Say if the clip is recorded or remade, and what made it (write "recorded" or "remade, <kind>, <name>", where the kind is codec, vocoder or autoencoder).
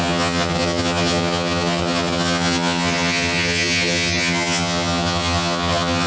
remade, vocoder, HiFi-GAN